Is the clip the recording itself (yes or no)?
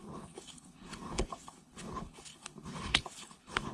no